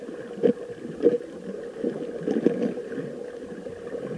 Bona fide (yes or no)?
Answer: yes